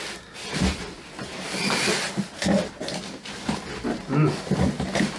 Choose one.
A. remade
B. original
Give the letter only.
B